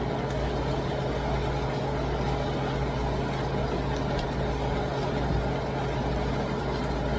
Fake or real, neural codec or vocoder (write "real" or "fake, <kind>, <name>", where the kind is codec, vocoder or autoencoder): real